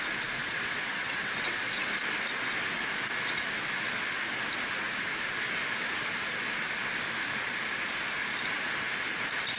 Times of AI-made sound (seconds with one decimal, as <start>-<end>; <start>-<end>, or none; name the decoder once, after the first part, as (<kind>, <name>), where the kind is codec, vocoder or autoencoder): 0.4-1.6 (vocoder, WaveNeXt)